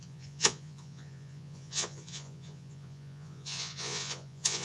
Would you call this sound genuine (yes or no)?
no